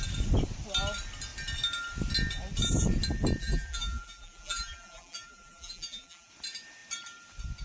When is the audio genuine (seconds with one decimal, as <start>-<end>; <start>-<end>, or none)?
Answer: 0.0-3.4; 6.3-7.6

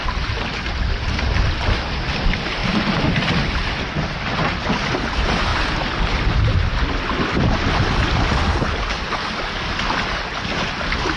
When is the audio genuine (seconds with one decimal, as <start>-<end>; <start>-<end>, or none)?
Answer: 1.0-5.5; 8.8-11.2

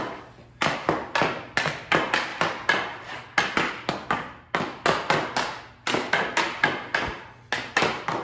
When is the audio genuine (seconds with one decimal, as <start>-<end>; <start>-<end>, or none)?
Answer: 0.0-8.2

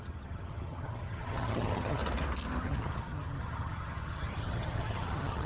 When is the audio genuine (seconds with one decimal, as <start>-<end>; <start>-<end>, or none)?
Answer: 2.0-2.6

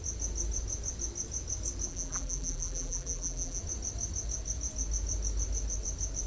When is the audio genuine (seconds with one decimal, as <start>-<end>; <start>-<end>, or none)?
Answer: 0.0-1.9; 3.6-6.3

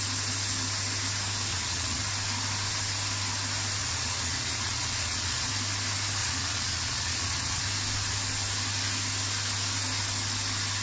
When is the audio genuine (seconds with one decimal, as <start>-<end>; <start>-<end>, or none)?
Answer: 0.0-1.5; 2.0-3.8; 5.5-6.2; 7.6-10.8

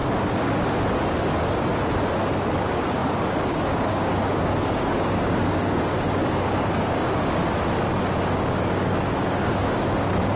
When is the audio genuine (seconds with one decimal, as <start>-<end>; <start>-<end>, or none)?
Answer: 0.0-2.6; 7.4-8.3